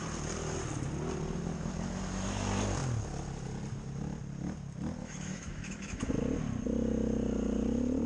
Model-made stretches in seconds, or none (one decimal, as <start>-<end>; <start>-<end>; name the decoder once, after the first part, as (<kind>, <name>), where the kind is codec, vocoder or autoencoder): 5.0-6.1 (autoencoder, DAC-VAE)